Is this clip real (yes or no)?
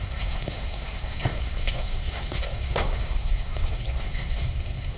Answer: no